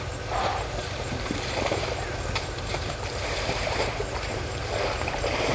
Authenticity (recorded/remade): remade